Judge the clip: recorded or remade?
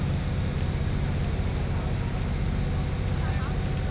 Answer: recorded